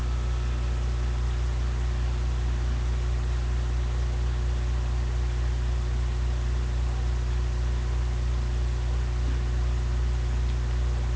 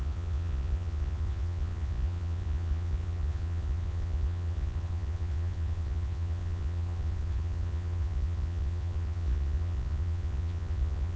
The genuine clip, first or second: first